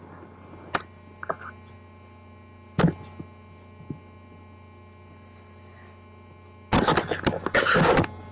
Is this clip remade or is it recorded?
recorded